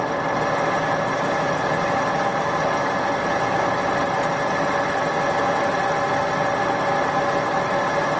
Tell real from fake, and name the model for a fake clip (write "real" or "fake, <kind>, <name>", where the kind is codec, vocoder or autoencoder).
real